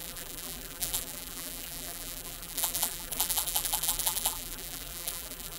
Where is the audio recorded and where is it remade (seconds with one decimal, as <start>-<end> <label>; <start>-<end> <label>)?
0.0-5.6 remade